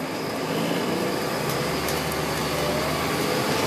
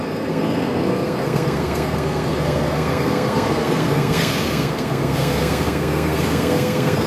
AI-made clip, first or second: second